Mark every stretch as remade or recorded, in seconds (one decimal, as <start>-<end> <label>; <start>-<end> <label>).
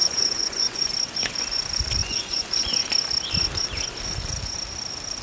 0.0-0.9 remade; 0.9-2.0 recorded; 2.0-2.7 remade; 2.7-5.2 recorded